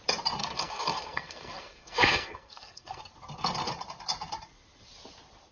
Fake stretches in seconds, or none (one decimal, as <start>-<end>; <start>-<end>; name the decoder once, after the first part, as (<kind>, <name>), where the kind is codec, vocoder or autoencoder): 0.4-3.0 (codec, SNAC)